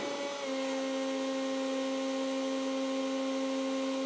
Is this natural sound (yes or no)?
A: yes